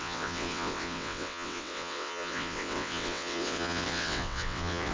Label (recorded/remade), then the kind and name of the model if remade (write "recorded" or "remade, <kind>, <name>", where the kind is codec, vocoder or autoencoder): remade, vocoder, WaveNeXt